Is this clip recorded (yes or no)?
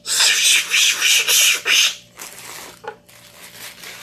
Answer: yes